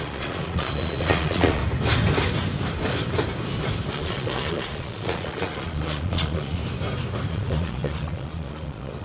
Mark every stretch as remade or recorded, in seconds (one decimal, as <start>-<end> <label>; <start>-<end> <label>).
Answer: 0.0-1.6 remade; 1.6-3.9 recorded; 3.9-6.6 remade; 6.6-7.3 recorded; 7.3-9.0 remade